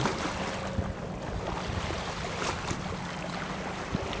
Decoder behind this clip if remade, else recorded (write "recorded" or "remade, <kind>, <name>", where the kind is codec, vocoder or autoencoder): recorded